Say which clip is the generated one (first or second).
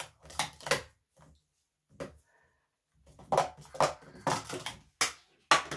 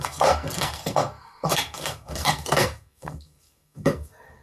second